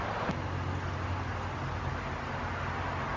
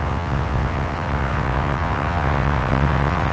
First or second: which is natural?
first